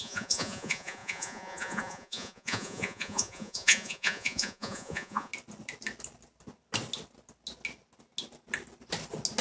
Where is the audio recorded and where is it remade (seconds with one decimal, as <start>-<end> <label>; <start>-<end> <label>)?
0.0-5.3 remade; 5.3-9.4 recorded